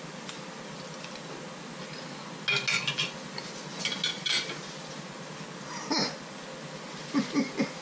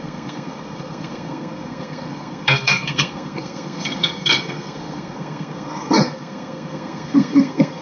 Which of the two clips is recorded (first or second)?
first